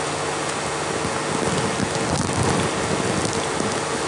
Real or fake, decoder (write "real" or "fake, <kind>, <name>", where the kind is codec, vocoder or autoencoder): real